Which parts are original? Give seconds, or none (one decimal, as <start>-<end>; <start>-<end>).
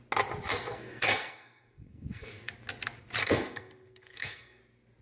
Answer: 0.0-0.5; 2.5-3.2; 4.6-5.0